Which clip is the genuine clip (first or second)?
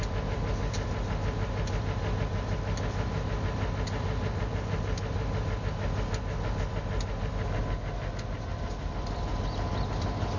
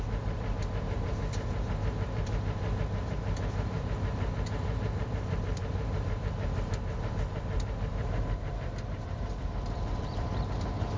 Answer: first